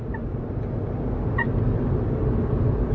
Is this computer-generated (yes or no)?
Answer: no